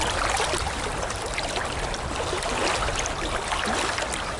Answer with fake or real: real